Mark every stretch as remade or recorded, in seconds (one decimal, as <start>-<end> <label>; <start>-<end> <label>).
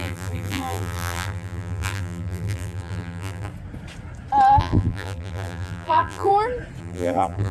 0.0-3.5 remade; 3.5-4.6 recorded; 4.6-6.3 remade; 6.3-6.8 recorded; 6.8-7.5 remade